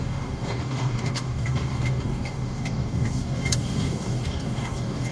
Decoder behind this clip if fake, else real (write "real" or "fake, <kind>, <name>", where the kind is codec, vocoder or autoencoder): fake, codec, DAC